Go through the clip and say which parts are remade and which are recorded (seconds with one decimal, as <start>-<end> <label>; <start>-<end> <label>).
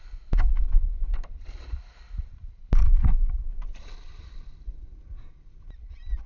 0.0-1.1 recorded; 1.1-3.9 remade; 3.9-6.3 recorded